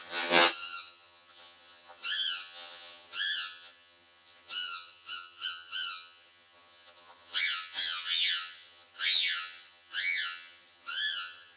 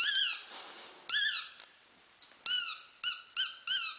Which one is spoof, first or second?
first